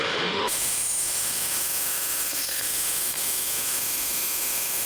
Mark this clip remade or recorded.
remade